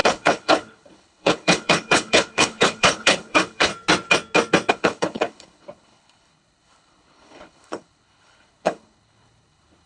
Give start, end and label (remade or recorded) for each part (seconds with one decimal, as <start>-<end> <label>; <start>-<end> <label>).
0.0-3.7 remade; 3.7-4.7 recorded; 4.7-9.9 remade